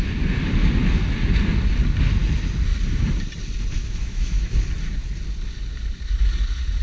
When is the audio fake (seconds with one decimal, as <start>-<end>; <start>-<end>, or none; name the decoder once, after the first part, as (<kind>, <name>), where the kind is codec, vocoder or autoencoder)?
3.8-4.5 (autoencoder, DAC-VAE)